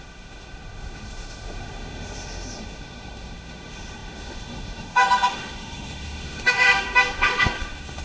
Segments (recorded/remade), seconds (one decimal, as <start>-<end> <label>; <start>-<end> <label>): 0.0-8.0 remade